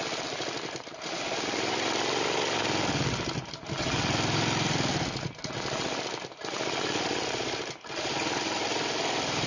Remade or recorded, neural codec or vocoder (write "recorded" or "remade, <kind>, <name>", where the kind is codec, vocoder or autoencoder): recorded